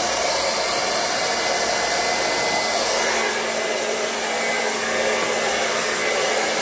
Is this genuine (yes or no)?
yes